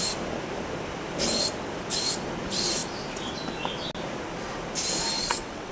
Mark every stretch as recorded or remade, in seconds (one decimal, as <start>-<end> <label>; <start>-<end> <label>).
0.0-5.2 recorded; 5.2-5.7 remade